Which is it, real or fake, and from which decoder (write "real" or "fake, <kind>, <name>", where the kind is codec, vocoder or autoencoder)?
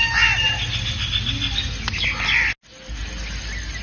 real